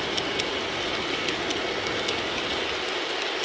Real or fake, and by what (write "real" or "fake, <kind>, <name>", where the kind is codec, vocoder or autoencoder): real